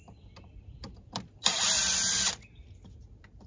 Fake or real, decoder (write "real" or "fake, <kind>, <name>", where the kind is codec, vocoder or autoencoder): real